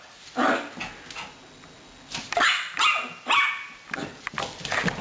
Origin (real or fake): real